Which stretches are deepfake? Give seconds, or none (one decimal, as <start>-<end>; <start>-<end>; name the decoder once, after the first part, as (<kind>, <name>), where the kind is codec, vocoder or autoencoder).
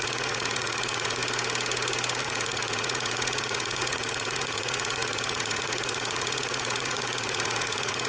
0.0-1.2 (vocoder, Vocos); 2.2-8.1